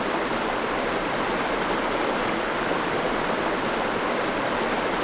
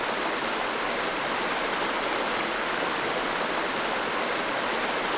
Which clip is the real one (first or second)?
second